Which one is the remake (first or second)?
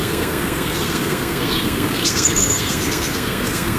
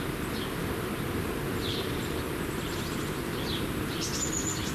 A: first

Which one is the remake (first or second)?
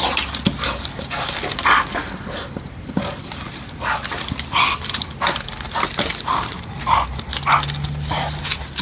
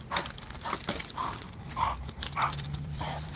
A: second